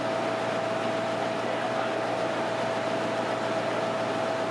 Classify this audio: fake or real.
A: real